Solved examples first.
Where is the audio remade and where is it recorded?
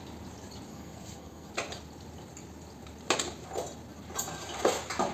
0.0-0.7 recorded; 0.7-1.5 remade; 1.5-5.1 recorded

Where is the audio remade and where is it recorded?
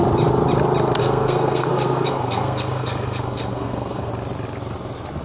0.0-1.0 recorded; 1.0-4.1 remade; 4.1-5.2 recorded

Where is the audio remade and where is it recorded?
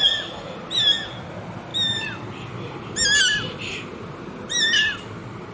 0.0-5.5 recorded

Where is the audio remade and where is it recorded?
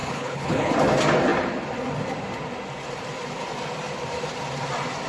0.0-0.7 remade; 0.7-5.1 recorded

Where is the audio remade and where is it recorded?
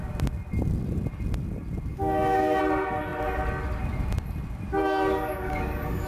0.0-1.9 recorded; 1.9-2.6 remade; 2.6-4.8 recorded; 4.8-6.1 remade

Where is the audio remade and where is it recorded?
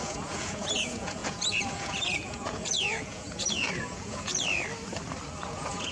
0.0-4.3 remade; 4.3-5.4 recorded; 5.4-5.9 remade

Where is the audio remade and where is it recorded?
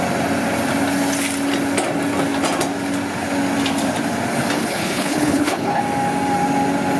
0.0-4.6 recorded; 4.6-5.8 remade; 5.8-7.0 recorded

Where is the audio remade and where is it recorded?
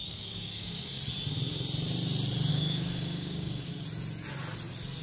0.0-1.0 remade; 1.0-2.5 recorded; 2.5-3.7 remade; 3.7-5.0 recorded